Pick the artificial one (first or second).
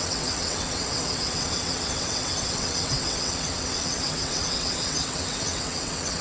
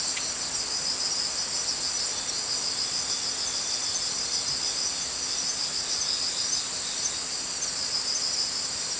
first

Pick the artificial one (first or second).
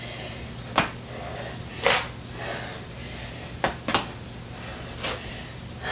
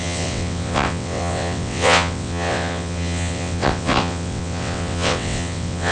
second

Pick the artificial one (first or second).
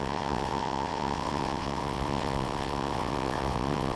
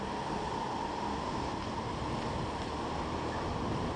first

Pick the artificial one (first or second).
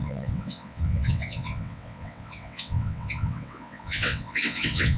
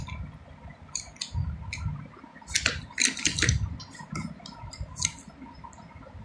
first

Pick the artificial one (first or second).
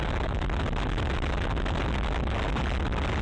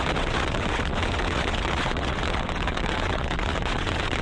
second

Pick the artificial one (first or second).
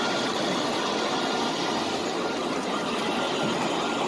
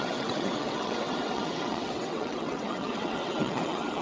second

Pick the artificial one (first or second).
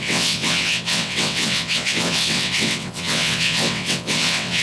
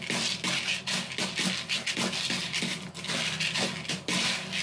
first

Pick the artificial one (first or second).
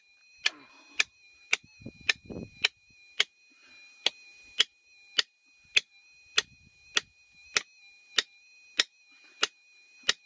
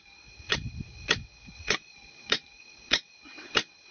second